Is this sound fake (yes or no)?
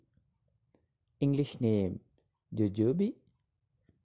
no